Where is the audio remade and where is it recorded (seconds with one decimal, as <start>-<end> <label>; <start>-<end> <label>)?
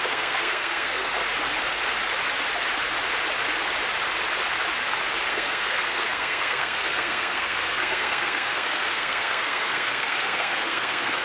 0.0-1.2 remade; 1.2-5.3 recorded; 5.3-11.2 remade